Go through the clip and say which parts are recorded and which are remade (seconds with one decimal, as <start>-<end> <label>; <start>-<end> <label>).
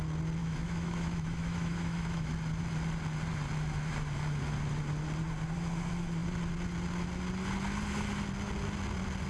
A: 0.0-0.4 recorded; 0.4-2.3 remade; 2.3-9.3 recorded